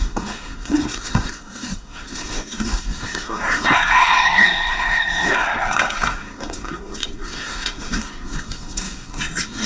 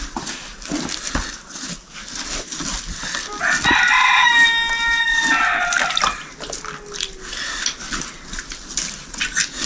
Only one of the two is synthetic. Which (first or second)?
first